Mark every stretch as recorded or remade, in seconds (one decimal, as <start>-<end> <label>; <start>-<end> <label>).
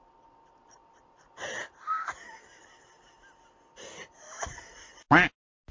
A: 0.0-5.7 recorded